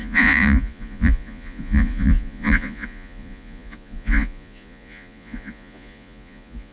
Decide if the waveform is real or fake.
fake